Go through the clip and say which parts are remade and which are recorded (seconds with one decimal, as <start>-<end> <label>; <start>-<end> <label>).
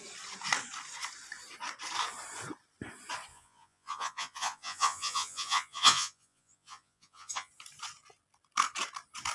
0.0-3.3 recorded; 3.3-7.5 remade; 7.5-9.3 recorded